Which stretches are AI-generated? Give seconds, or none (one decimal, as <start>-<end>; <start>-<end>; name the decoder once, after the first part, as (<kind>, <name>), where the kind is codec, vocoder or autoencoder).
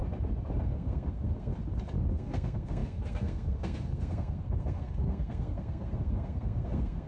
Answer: 0.6-1.5 (codec, SNAC); 2.1-7.1